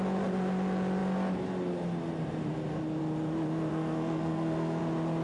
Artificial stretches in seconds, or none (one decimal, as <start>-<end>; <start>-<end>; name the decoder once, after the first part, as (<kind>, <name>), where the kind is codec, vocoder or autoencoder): 3.7-4.8 (codec, SNAC)